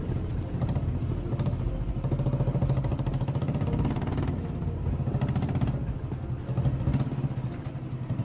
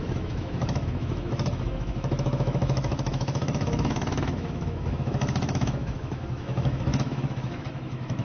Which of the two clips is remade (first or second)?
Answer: second